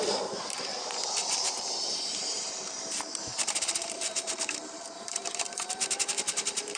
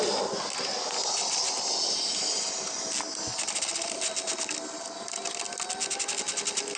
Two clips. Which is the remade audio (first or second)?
first